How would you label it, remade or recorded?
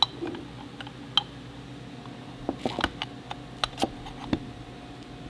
recorded